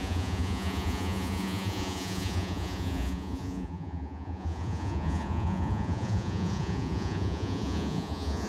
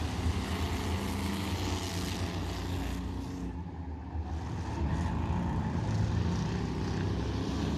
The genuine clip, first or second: second